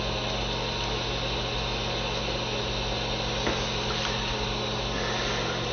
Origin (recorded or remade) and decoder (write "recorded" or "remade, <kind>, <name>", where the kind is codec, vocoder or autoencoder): recorded